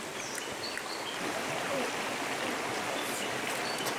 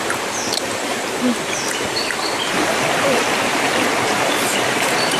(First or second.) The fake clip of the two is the second